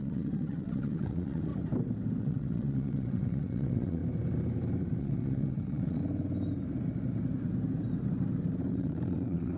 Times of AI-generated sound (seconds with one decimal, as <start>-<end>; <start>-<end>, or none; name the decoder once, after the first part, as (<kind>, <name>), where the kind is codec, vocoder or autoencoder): 0.0-1.5 (vocoder, WaveNeXt); 2.2-4.0; 5.0-6.0; 8.7-9.6